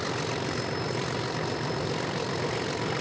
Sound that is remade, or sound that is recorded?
remade